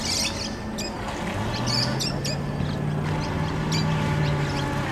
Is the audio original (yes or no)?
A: yes